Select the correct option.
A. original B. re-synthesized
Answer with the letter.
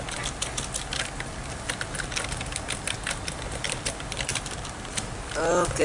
A